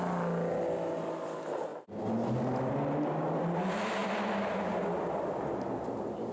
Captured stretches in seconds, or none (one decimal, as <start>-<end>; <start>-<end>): 0.0-6.3